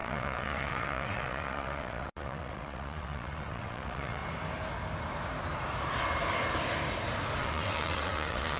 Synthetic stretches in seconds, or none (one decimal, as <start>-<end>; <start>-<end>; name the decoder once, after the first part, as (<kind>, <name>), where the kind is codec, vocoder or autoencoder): 0.0-4.2 (vocoder, WaveNeXt); 7.4-8.6